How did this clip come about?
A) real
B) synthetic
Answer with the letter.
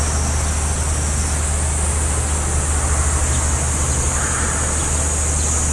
A